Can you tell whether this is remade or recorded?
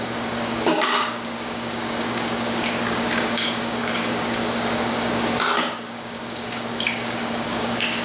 remade